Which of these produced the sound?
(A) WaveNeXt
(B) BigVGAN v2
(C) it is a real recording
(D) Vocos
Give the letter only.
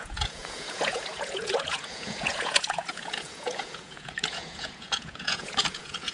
D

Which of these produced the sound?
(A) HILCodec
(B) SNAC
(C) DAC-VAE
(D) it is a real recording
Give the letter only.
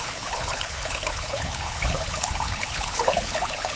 A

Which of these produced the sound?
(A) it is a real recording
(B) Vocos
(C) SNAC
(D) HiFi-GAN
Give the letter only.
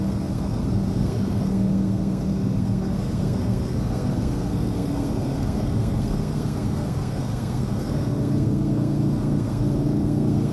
C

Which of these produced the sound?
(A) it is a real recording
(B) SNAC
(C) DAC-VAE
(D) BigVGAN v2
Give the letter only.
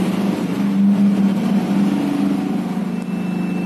A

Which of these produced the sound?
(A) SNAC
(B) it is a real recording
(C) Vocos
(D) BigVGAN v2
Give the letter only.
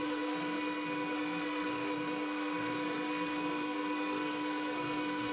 A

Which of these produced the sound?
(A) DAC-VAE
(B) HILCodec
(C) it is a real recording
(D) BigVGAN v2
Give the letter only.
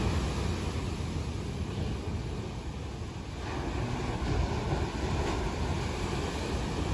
C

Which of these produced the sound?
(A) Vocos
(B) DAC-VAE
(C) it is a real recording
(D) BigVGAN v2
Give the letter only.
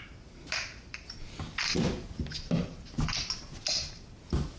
C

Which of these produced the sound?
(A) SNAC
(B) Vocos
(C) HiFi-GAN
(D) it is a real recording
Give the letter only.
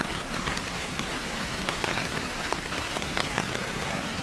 A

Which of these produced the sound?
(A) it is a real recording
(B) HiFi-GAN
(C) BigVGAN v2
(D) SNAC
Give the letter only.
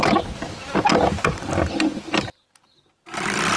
A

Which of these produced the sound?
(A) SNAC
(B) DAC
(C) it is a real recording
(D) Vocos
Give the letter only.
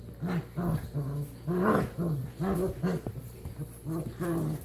C